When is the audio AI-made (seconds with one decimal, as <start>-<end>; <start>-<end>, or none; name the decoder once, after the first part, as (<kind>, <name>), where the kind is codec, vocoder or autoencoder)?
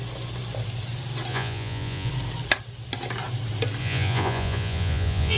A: 1.3-2.1 (vocoder, Vocos); 3.8-5.4